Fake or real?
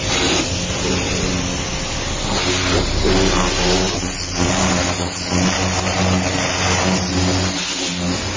real